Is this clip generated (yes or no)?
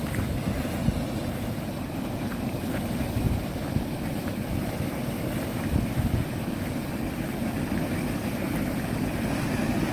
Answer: no